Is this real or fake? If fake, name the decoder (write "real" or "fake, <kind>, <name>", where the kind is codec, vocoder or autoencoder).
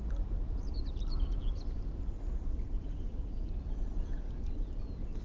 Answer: real